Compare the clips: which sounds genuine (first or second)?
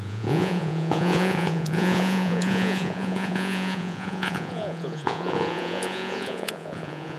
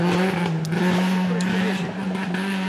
second